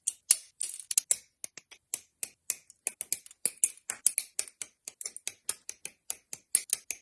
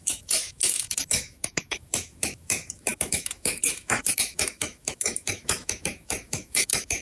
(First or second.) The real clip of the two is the first